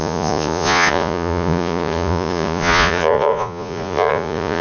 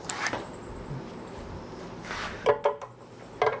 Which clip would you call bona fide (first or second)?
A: second